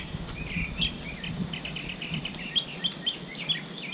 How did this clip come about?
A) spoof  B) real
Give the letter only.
B